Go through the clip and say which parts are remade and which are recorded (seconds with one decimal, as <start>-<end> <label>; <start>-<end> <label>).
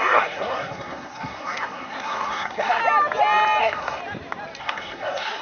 0.0-2.8 remade; 2.8-3.6 recorded; 3.6-4.0 remade; 4.0-4.6 recorded; 4.6-5.4 remade